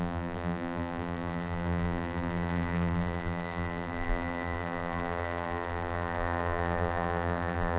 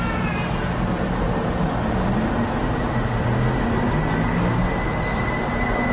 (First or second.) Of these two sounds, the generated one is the first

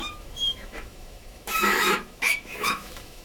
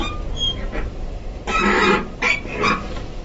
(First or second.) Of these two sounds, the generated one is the first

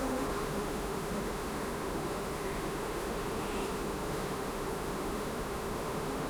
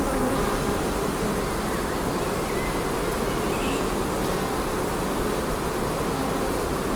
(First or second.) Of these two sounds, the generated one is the first